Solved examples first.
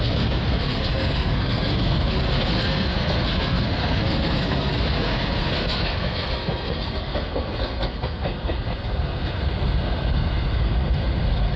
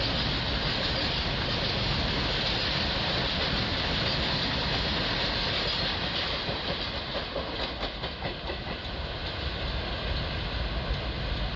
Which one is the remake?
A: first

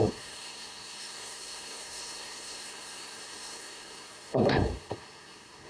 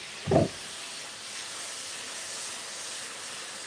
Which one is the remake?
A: first